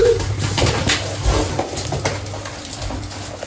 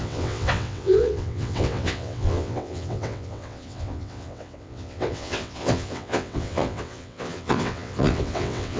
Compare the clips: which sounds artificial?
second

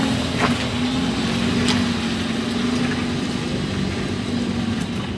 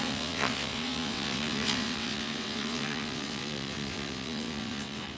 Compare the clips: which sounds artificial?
second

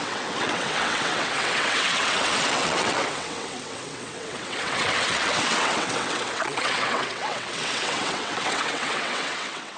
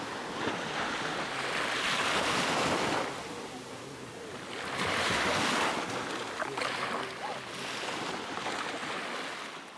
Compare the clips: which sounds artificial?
first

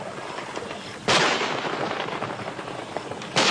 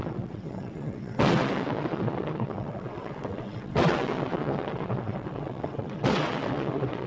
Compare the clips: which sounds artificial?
second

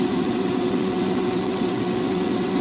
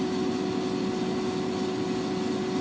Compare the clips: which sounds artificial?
first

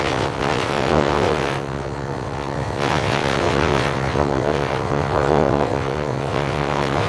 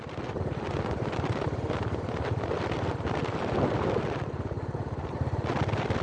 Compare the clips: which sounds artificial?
first